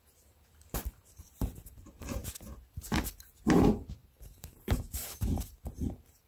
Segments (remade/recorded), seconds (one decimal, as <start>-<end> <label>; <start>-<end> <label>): 0.0-2.2 remade; 2.2-3.6 recorded; 3.6-6.3 remade